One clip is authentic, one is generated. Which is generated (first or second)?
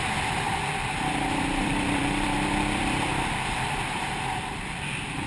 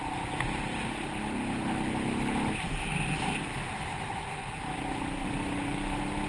first